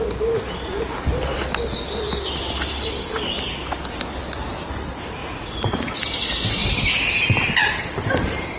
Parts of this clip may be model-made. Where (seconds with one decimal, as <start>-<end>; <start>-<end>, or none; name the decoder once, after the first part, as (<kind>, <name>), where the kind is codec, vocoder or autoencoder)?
5.2-6.0 (vocoder, Vocos)